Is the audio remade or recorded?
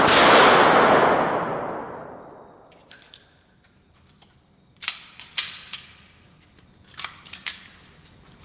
recorded